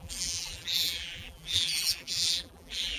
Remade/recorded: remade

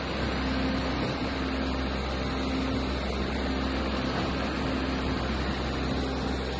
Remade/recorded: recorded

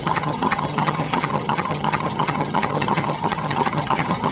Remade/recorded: remade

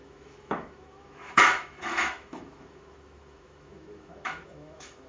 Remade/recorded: remade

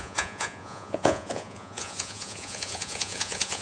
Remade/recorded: remade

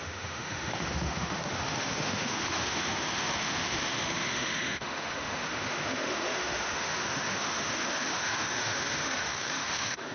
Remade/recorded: remade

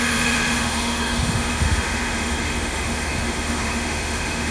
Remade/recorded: remade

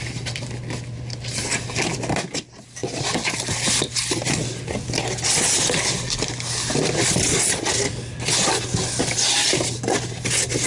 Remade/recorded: recorded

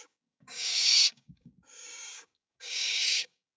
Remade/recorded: remade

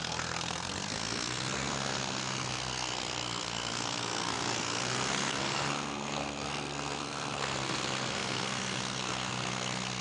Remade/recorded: remade